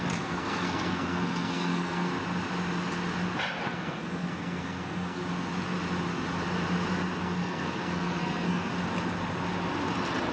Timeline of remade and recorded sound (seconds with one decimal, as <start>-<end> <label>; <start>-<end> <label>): 0.0-2.1 remade; 2.1-3.6 recorded; 3.6-5.2 remade; 5.2-7.2 recorded; 7.2-8.7 remade; 8.7-10.3 recorded